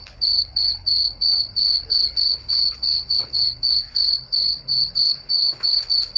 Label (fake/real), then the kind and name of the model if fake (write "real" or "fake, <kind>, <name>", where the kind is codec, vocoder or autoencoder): fake, codec, HILCodec